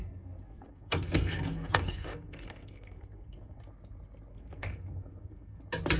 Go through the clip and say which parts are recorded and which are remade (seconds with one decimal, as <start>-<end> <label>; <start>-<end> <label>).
0.0-3.6 remade; 3.6-4.3 recorded; 4.3-5.6 remade; 5.6-6.0 recorded